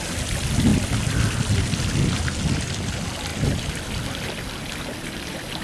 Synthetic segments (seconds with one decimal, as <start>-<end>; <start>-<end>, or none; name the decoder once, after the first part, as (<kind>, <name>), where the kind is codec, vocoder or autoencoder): none